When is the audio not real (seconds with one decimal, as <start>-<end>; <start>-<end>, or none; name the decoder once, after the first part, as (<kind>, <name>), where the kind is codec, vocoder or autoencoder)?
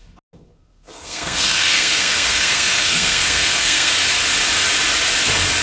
0.5-3.9 (codec, SNAC)